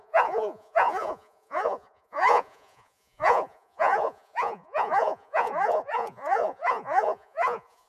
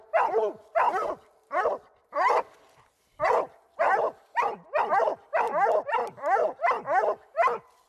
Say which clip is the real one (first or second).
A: second